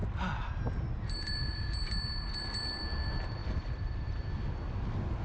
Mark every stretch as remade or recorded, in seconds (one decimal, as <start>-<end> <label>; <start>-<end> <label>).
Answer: 0.0-3.4 recorded; 3.4-4.2 remade; 4.2-5.2 recorded